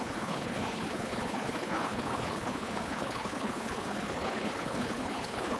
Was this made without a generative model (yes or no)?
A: no